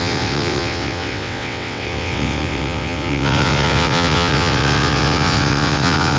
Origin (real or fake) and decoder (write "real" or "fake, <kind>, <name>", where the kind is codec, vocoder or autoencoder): fake, vocoder, WaveNeXt